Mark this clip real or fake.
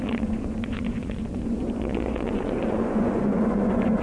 fake